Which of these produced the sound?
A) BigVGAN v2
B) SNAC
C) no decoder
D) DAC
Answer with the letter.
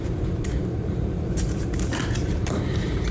A